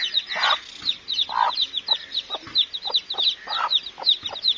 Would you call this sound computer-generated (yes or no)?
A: no